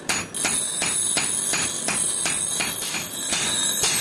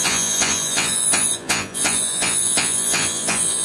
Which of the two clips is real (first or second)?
first